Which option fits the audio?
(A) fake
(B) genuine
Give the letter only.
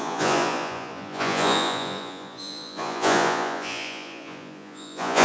A